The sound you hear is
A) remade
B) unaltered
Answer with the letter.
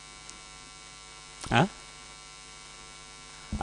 B